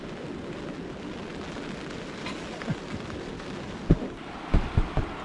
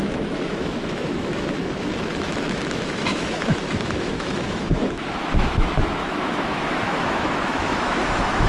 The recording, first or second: first